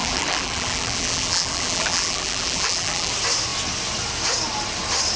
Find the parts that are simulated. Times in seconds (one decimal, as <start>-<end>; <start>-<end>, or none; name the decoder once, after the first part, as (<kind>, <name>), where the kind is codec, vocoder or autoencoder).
0.0-3.1 (vocoder, BigVGAN v2)